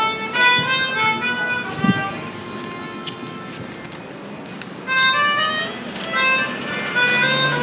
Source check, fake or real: real